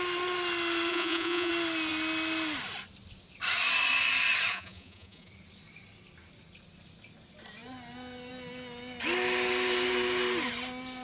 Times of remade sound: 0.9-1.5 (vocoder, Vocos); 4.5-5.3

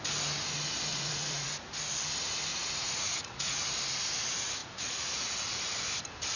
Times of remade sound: 0.9-1.5 (vocoder, Vocos); 2.5-3.6; 4.6-5.6

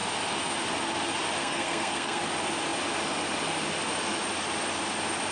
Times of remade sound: 1.4-2.2 (codec, SNAC)